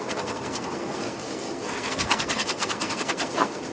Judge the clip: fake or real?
fake